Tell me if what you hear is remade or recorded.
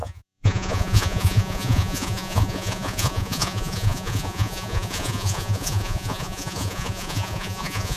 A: remade